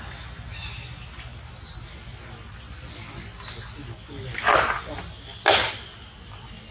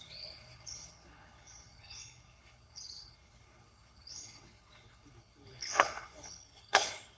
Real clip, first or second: first